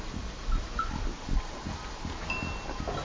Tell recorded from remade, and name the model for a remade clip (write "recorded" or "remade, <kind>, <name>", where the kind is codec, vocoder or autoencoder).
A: recorded